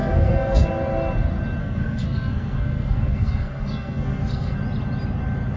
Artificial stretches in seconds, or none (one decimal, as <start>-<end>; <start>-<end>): 0.0-0.7; 1.6-4.6